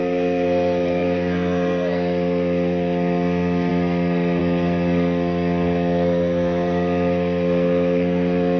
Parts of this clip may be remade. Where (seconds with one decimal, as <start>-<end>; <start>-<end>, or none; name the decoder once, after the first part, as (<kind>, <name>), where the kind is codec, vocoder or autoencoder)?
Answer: 0.0-8.6 (codec, SNAC)